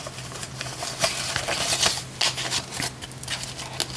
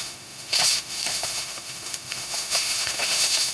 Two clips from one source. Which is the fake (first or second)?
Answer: second